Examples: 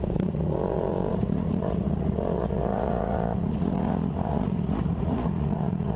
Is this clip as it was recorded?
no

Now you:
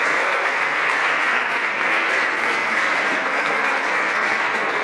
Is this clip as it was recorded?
no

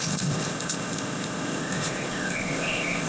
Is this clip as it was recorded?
no